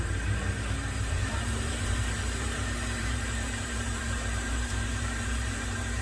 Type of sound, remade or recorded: remade